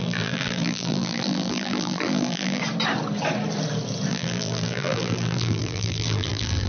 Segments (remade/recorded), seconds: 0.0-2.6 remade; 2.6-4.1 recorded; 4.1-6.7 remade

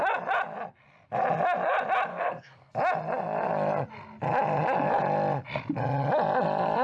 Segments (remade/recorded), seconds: 0.0-2.1 recorded; 2.1-2.7 remade; 2.7-6.8 recorded

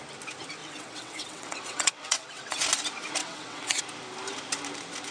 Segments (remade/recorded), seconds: 0.0-0.6 recorded; 0.6-2.6 remade; 2.6-3.2 recorded; 3.2-3.8 remade; 3.8-5.1 recorded

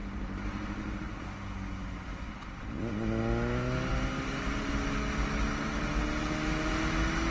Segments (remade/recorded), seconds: 0.0-1.2 remade; 1.2-3.9 recorded; 3.9-4.7 remade; 4.7-7.3 recorded

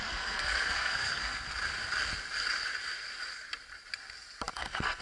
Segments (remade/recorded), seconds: 0.0-1.5 remade; 1.5-4.5 recorded; 4.5-5.0 remade